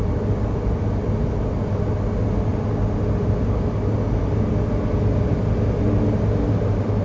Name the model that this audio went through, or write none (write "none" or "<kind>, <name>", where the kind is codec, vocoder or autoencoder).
none